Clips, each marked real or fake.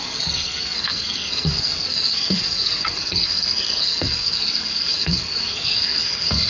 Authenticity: fake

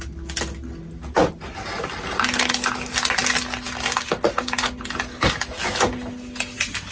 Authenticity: real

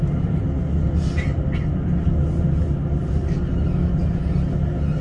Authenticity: real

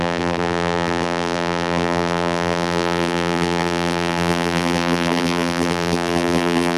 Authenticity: fake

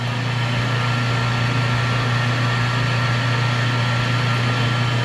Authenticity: real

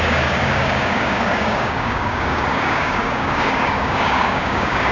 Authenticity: fake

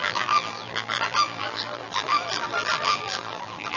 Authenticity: fake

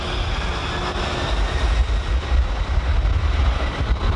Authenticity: real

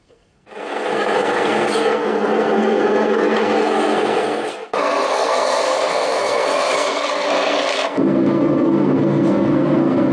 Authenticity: fake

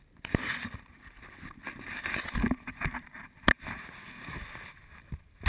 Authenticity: real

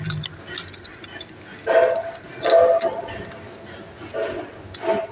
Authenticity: real